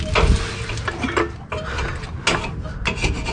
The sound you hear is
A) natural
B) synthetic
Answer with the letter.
A